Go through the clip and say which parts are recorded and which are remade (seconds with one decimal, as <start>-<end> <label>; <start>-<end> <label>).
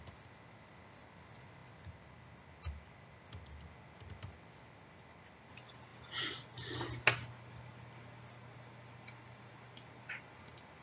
0.0-10.8 recorded